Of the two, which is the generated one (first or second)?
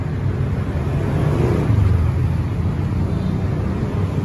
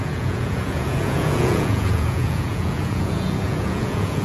second